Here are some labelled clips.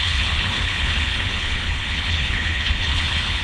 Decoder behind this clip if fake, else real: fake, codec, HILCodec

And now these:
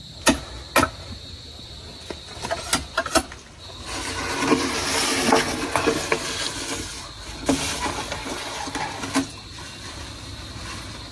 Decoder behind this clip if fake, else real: real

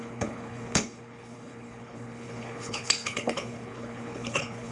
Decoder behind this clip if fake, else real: fake, codec, HILCodec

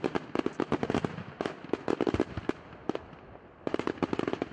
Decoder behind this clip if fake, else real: real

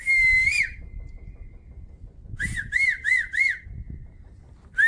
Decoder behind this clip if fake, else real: real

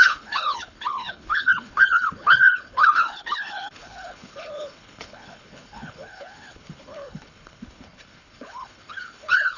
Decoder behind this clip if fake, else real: fake, codec, HILCodec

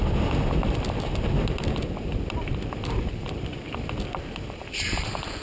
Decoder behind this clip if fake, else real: real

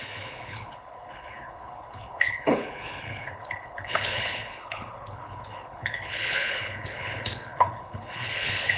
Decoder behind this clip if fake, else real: fake, codec, HILCodec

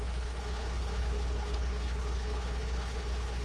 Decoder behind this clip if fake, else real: fake, codec, HILCodec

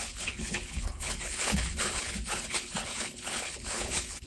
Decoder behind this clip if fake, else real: fake, codec, HILCodec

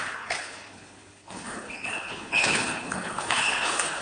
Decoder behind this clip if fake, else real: fake, codec, HILCodec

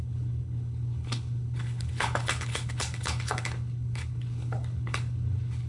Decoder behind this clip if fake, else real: fake, codec, HILCodec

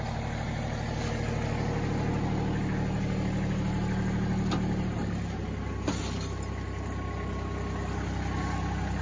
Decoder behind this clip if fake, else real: real